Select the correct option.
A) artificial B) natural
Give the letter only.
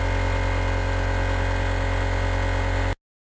B